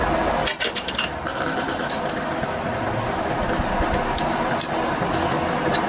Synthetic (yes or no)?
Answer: no